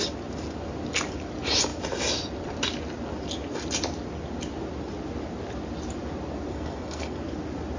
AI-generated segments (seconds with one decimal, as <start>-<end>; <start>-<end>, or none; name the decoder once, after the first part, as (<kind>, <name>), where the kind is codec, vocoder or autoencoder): 6.5-7.2 (codec, SNAC)